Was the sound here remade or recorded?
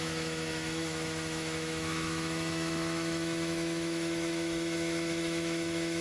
remade